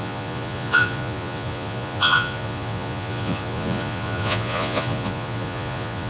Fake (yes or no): yes